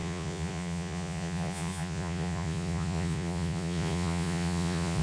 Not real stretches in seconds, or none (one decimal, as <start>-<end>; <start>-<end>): 0.0-5.0